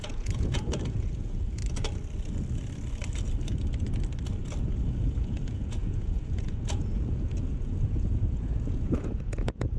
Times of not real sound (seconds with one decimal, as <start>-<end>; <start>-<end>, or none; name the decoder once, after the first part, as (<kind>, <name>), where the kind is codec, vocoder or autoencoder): 0.0-1.6 (vocoder, Vocos); 4.6-9.8